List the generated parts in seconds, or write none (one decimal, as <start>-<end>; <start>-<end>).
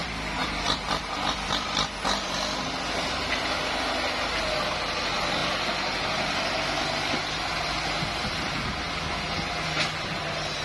none